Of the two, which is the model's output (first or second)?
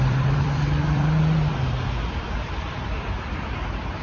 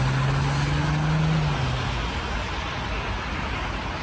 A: first